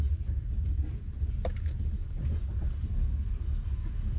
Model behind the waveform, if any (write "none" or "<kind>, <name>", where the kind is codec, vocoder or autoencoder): none